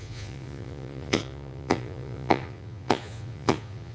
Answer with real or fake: fake